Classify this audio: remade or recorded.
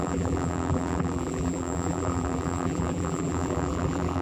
remade